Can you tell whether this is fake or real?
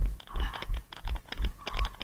fake